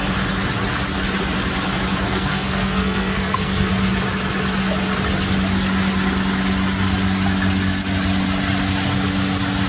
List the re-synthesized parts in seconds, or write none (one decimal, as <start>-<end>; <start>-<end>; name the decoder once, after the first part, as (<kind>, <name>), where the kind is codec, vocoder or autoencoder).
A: 2.1-3.7 (codec, SNAC)